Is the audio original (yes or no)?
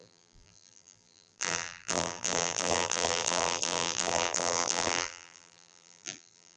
no